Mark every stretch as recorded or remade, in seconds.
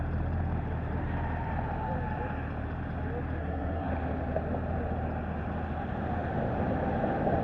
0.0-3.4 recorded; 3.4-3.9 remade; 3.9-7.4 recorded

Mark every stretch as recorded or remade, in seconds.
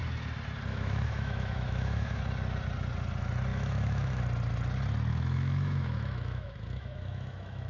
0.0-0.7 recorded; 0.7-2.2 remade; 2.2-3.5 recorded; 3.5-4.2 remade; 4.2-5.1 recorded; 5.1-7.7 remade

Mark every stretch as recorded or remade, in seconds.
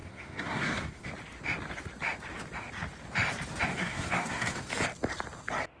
0.0-1.1 remade; 1.1-3.7 recorded; 3.7-4.7 remade; 4.7-5.8 recorded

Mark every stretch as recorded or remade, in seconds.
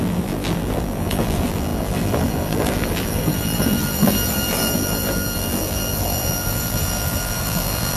0.0-8.0 remade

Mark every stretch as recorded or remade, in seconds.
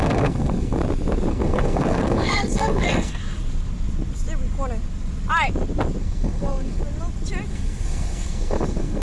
0.0-0.8 remade; 0.8-1.3 recorded; 1.3-3.2 remade; 3.2-6.0 recorded; 6.0-6.8 remade; 6.8-7.5 recorded; 7.5-9.0 remade